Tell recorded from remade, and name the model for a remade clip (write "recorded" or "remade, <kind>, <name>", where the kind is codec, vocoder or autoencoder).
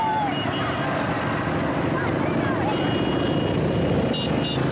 recorded